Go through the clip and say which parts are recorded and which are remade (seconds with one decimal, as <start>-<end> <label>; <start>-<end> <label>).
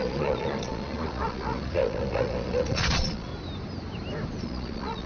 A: 0.0-3.3 remade; 3.3-4.4 recorded; 4.4-5.1 remade